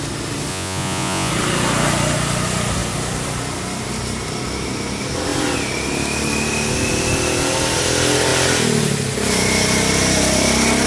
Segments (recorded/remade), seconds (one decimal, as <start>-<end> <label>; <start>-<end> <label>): 0.0-0.5 recorded; 0.5-1.3 remade; 1.3-10.9 recorded

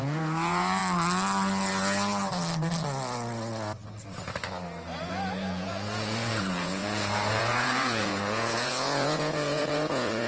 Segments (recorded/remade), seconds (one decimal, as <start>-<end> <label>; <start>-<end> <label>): 0.0-0.8 remade; 0.8-5.1 recorded; 5.1-10.3 remade

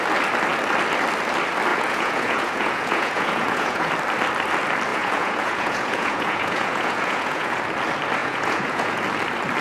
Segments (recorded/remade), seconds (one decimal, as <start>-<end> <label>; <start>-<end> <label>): 0.0-1.7 recorded; 1.7-3.9 remade; 3.9-4.9 recorded; 4.9-7.6 remade; 7.6-8.2 recorded; 8.2-9.0 remade; 9.0-9.6 recorded

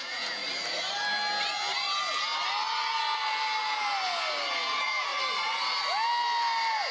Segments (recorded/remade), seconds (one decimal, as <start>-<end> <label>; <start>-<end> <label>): 0.0-0.4 remade; 0.4-4.5 recorded; 4.5-5.1 remade; 5.1-6.9 recorded